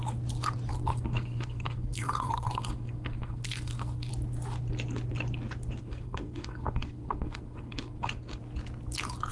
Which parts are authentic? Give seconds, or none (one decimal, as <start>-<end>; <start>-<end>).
0.0-0.7; 4.1-5.8; 8.4-9.3